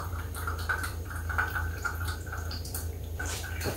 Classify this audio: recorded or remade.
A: remade